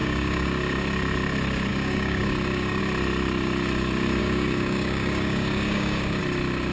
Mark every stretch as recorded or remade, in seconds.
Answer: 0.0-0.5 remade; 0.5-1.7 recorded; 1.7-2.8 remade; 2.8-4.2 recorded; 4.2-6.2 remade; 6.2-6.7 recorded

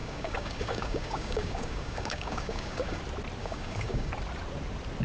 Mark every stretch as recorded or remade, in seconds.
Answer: 0.0-3.0 remade; 3.0-3.4 recorded; 3.4-4.1 remade; 4.1-5.0 recorded

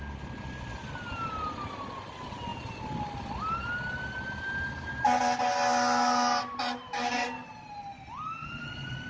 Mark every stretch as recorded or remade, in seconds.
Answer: 0.0-9.1 recorded

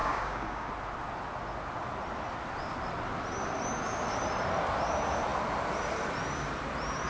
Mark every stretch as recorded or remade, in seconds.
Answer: 0.0-0.7 remade; 0.7-7.1 recorded

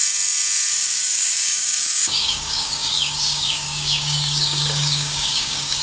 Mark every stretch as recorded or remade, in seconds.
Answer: 0.0-0.7 recorded; 0.7-5.8 remade